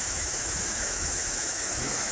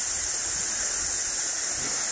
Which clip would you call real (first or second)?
second